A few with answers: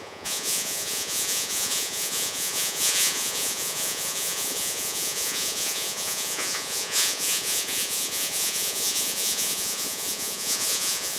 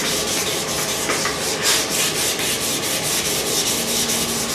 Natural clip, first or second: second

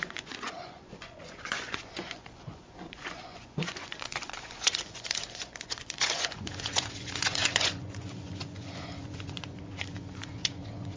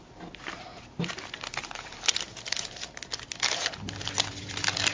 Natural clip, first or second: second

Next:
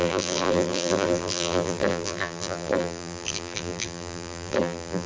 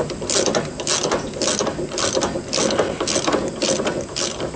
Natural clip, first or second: second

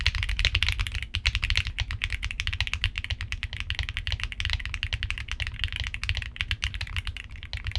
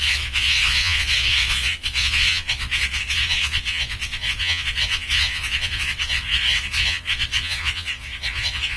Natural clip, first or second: first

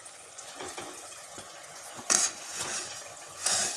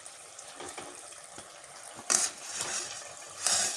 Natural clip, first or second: second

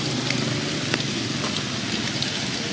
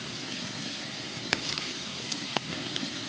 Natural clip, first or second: first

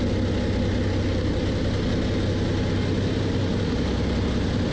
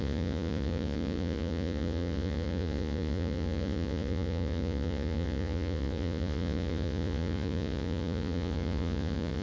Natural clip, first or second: first